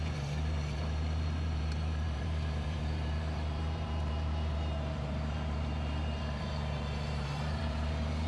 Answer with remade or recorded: remade